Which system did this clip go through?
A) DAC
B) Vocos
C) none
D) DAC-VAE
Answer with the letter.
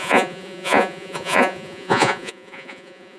B